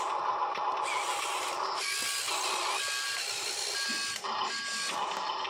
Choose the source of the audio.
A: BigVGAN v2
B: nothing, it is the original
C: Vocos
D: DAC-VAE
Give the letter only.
B